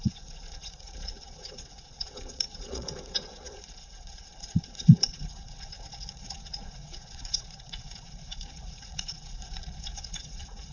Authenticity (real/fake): fake